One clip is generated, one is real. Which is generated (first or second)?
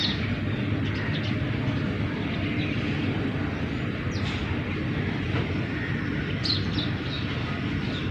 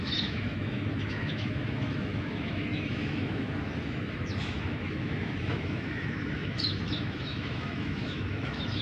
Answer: second